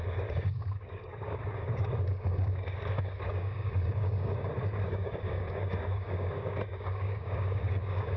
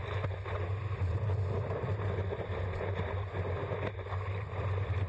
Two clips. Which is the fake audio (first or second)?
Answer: first